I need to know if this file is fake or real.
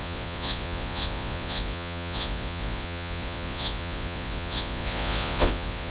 fake